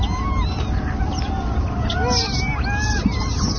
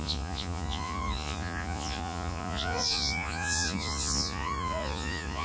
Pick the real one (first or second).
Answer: first